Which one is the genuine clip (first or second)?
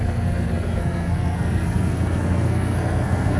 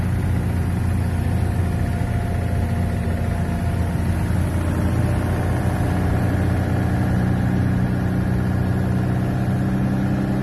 second